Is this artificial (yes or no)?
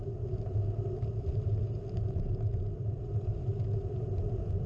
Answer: no